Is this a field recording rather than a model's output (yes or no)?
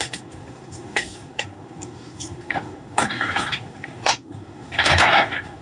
no